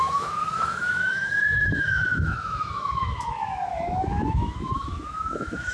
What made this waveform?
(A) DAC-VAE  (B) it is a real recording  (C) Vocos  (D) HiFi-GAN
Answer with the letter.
A